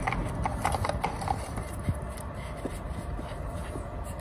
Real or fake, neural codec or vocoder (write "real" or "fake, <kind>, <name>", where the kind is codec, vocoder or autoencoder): real